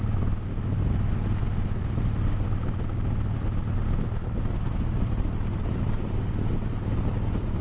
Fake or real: real